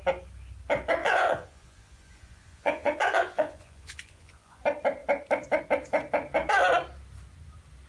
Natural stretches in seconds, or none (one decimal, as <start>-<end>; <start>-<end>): 0.0-1.0; 4.6-7.9